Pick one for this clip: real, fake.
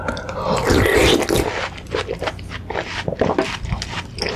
real